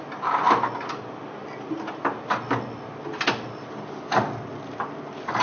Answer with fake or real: real